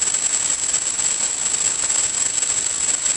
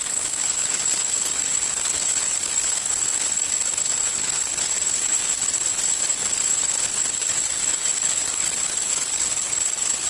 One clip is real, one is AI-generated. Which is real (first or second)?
first